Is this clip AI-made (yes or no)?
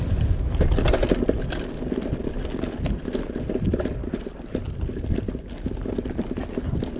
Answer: no